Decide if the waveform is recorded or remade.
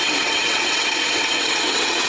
remade